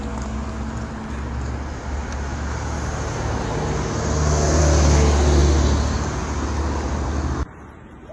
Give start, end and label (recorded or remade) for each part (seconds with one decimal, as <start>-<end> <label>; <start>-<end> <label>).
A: 0.0-8.1 recorded